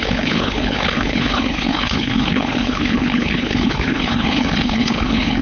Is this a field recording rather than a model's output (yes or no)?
no